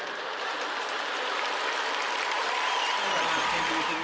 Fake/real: fake